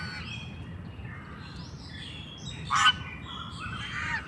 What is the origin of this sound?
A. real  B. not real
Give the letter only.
A